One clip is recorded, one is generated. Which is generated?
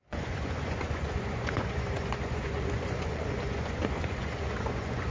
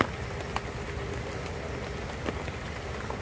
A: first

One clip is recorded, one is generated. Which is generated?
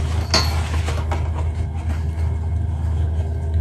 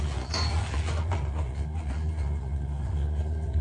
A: second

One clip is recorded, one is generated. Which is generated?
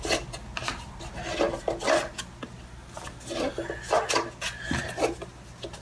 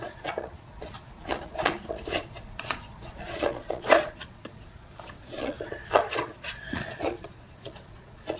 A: second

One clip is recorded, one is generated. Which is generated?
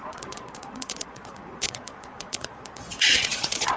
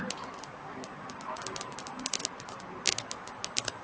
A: first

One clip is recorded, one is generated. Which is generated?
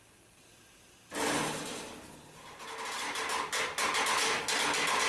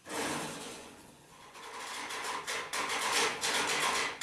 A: second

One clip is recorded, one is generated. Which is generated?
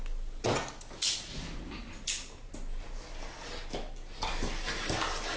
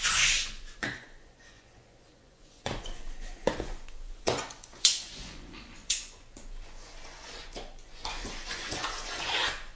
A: second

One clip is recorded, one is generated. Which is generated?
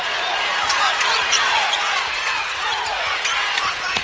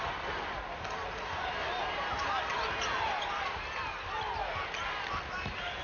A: first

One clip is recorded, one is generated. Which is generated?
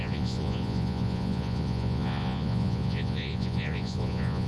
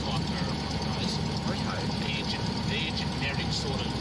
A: first